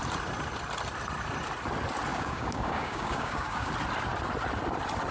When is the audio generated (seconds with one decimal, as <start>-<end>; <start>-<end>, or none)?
2.1-3.7